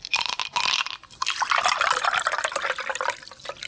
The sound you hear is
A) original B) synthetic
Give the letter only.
A